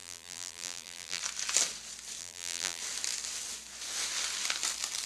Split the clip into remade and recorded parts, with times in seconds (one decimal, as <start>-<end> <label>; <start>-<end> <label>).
0.0-1.2 remade; 1.2-2.2 recorded; 2.2-2.8 remade; 2.8-5.1 recorded